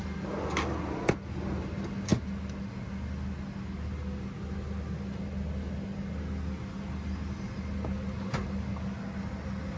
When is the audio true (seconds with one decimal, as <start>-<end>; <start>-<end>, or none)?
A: 0.0-9.8

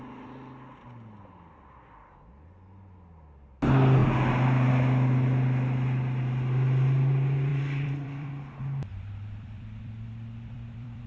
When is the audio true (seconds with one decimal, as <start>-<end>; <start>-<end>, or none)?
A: 0.0-7.5; 8.3-8.9